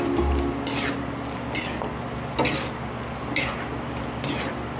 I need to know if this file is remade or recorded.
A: recorded